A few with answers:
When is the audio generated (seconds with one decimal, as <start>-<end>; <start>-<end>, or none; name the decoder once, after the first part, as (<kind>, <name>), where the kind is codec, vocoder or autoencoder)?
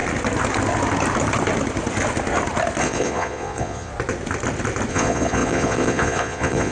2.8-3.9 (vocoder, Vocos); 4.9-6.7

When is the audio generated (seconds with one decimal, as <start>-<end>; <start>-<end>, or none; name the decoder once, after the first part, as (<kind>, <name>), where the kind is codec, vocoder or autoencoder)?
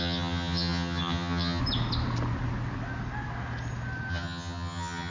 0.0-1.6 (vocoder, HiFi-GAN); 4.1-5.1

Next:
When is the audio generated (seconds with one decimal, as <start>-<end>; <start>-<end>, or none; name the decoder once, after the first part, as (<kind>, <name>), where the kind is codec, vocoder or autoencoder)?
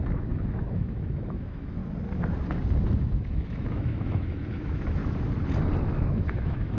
0.0-1.8 (autoencoder, DAC-VAE); 2.9-5.0; 5.8-6.8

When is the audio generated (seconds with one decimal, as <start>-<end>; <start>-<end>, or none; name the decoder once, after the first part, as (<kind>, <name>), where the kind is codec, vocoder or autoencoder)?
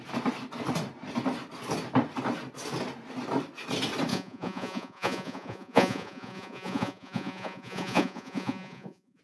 4.1-9.2 (vocoder, Vocos)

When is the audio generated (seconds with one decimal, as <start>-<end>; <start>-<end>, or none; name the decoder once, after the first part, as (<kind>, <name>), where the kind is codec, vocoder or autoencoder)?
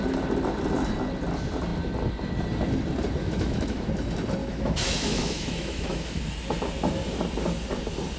3.2-3.9 (autoencoder, DAC-VAE); 4.4-6.2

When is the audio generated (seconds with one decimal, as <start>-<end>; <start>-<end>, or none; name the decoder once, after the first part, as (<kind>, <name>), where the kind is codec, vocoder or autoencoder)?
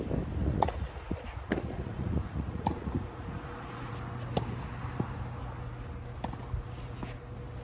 0.4-3.9 (vocoder, Vocos)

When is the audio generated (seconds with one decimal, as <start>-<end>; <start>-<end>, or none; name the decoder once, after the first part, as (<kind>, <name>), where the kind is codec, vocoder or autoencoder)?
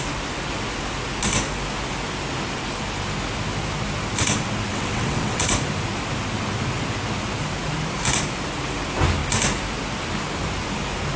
4.7-5.4 (vocoder, WaveNeXt)